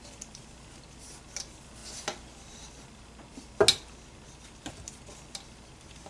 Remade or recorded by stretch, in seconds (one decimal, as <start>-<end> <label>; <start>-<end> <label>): 0.0-6.1 recorded